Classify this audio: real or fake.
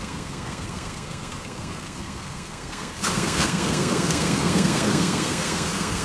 fake